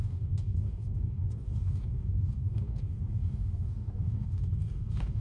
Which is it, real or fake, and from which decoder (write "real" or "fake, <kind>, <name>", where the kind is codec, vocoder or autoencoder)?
fake, codec, DAC